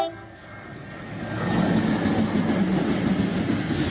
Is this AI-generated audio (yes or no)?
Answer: no